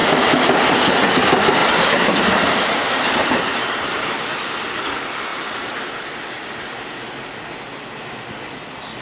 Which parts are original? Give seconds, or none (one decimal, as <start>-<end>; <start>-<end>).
0.0-1.6; 4.3-5.3; 6.0-9.0